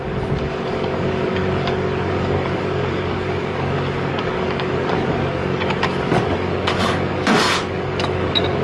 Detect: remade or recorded remade